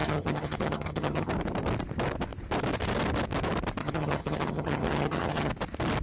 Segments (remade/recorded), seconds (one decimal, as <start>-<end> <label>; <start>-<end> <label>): 0.0-1.3 remade; 1.3-3.8 recorded; 3.8-5.5 remade; 5.5-6.0 recorded